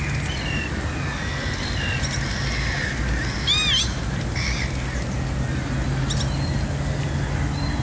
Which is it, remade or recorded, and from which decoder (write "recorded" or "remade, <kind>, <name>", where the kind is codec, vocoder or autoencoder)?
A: recorded